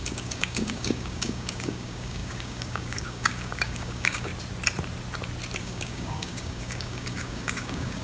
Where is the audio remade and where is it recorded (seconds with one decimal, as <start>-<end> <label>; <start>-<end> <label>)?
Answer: 0.0-4.3 remade; 4.3-5.6 recorded; 5.6-8.0 remade